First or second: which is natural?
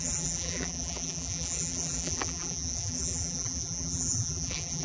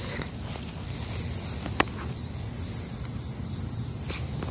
second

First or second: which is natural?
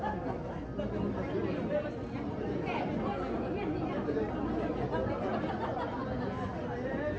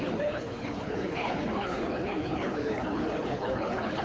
first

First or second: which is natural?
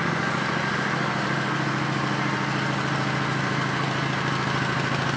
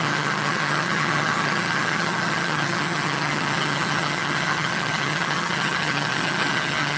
first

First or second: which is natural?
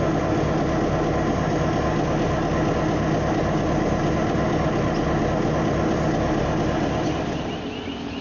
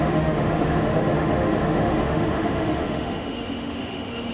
first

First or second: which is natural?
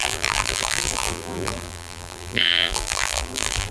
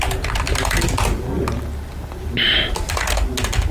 second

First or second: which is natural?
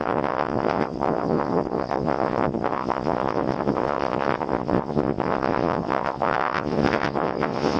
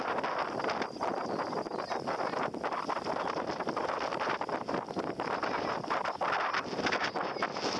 second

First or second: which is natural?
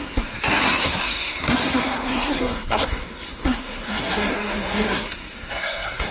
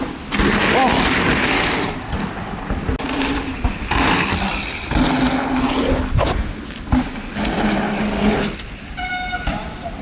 second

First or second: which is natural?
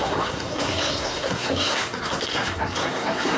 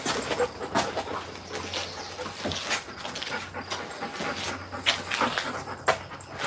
second